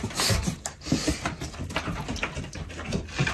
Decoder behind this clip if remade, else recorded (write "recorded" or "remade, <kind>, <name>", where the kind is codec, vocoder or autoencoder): recorded